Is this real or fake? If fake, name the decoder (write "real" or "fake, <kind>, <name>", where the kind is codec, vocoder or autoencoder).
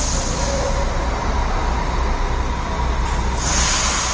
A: real